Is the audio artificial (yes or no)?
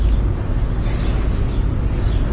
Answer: no